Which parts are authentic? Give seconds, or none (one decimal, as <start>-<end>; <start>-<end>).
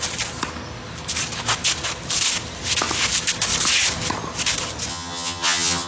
0.0-4.9